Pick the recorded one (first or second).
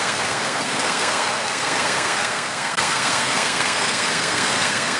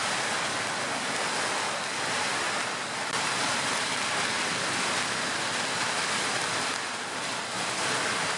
second